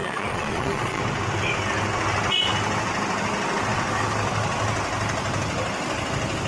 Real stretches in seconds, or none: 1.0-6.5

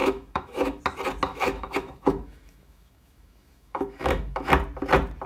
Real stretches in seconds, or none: 0.8-1.3; 4.5-5.3

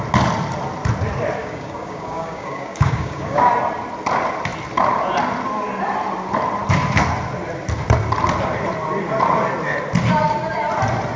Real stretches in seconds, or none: 0.0-1.4; 3.5-11.2

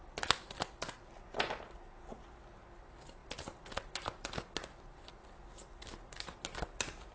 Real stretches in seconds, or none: 0.0-7.1

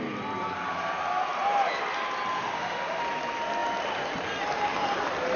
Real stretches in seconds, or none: 0.0-2.3; 3.0-5.4

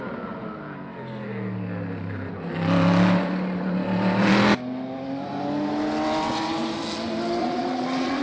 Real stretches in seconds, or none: 0.0-7.4

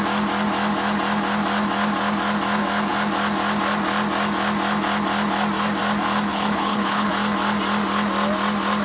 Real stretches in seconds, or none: 0.0-6.3; 7.1-8.8

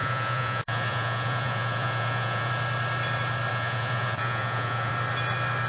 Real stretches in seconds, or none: 2.5-3.5; 4.9-5.7